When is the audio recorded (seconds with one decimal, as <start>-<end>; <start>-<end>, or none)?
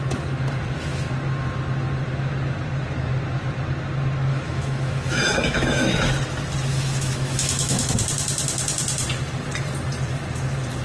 0.0-4.3; 6.1-6.7; 8.0-10.8